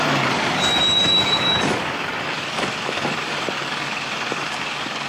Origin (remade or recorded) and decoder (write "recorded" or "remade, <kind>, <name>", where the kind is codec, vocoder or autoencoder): remade, codec, DAC